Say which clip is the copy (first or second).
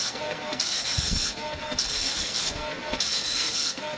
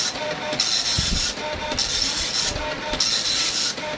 first